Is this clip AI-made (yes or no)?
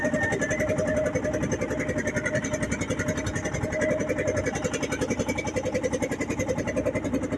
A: no